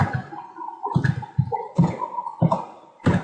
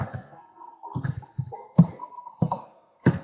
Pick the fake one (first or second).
second